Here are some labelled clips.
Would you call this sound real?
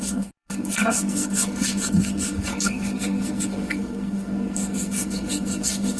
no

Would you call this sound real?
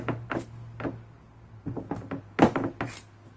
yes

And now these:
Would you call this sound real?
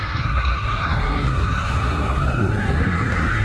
no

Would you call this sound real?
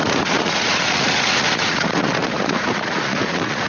no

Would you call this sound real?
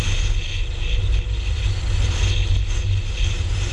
yes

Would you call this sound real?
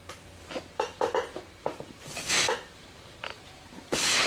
no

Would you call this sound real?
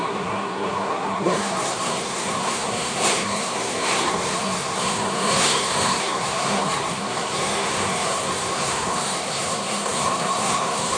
no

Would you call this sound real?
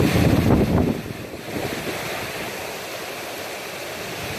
yes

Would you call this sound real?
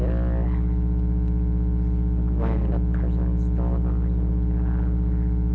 yes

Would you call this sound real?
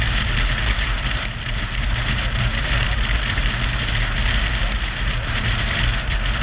yes